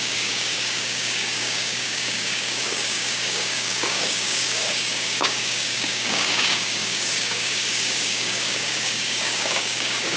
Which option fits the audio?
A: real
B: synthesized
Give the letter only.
B